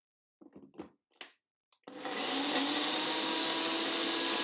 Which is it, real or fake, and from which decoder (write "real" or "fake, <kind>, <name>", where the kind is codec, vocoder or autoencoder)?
real